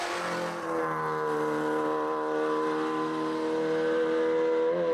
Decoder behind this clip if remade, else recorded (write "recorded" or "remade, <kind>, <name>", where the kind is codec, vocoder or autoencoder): recorded